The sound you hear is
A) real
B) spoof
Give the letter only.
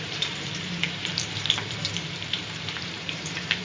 B